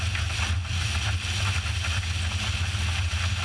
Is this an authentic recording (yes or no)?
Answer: yes